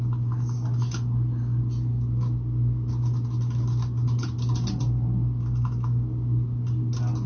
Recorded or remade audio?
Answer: recorded